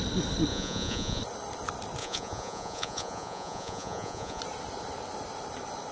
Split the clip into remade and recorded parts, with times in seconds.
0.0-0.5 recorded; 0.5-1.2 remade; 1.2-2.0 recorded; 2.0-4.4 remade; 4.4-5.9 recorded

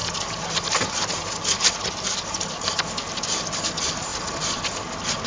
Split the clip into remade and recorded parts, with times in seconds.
0.0-5.3 recorded

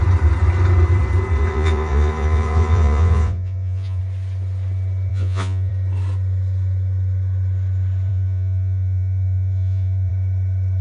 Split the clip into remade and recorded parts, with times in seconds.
0.0-1.5 recorded; 1.5-4.0 remade; 4.0-5.1 recorded; 5.1-5.7 remade; 5.7-8.1 recorded; 8.1-10.1 remade; 10.1-10.8 recorded